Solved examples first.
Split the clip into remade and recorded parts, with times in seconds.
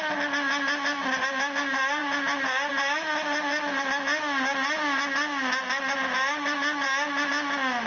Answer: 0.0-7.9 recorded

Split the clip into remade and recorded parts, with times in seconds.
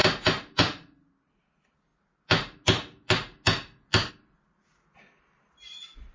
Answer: 0.0-6.1 recorded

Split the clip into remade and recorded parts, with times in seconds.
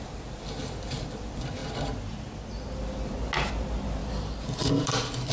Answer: 0.0-4.0 recorded; 4.0-5.3 remade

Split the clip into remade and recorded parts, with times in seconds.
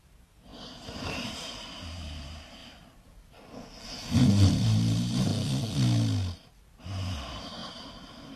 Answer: 0.0-2.6 remade; 2.6-4.1 recorded; 4.1-5.3 remade; 5.3-6.7 recorded; 6.7-8.4 remade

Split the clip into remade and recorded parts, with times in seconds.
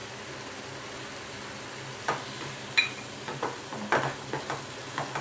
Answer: 0.0-5.2 recorded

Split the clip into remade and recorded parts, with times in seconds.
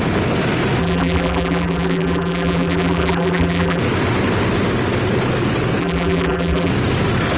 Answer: 0.0-0.8 recorded; 0.8-3.8 remade; 3.8-5.8 recorded; 5.8-6.7 remade; 6.7-7.4 recorded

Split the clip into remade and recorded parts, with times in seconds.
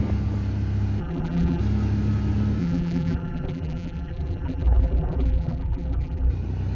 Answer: 0.0-1.0 recorded; 1.0-1.6 remade; 1.6-2.6 recorded; 2.6-6.3 remade; 6.3-6.8 recorded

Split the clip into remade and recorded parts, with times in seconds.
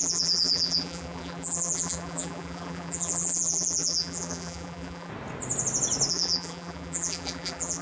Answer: 0.0-5.1 remade; 5.1-6.1 recorded; 6.1-7.8 remade